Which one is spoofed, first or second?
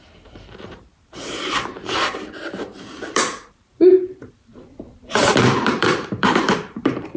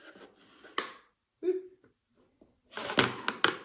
first